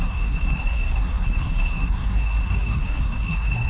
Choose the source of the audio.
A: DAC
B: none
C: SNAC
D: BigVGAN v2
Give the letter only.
C